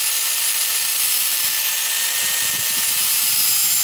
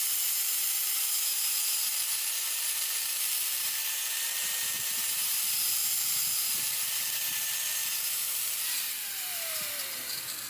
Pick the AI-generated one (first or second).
second